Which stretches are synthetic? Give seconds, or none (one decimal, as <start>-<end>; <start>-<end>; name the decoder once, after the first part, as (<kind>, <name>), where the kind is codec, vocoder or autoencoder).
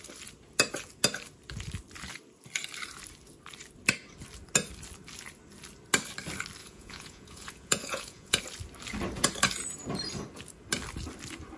6.6-8.4 (vocoder, Vocos)